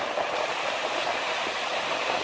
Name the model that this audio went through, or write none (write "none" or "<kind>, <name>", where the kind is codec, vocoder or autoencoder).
none